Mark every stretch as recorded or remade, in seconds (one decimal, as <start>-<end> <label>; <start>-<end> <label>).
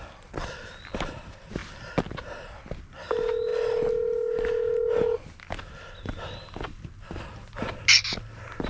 0.0-8.7 recorded